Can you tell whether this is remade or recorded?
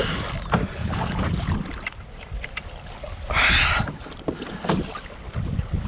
recorded